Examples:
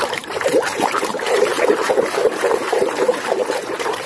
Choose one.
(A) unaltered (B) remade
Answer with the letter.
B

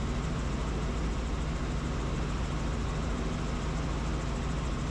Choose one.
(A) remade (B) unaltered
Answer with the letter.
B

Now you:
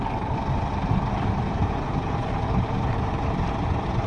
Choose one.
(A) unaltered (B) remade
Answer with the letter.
A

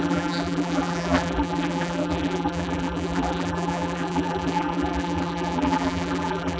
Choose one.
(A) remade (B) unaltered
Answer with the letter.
A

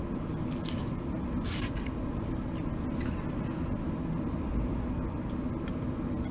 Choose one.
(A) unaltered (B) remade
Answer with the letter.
B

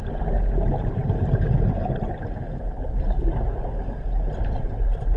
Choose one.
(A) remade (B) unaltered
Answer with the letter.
B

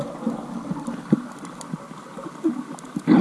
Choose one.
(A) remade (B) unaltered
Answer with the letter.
B